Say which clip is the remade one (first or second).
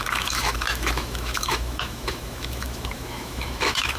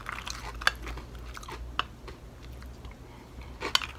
first